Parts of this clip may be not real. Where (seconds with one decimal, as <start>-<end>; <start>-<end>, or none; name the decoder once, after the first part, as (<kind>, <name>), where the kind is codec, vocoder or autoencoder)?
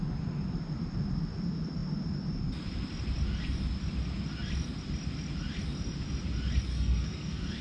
6.7-7.6 (codec, SNAC)